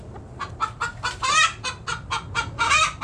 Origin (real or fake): real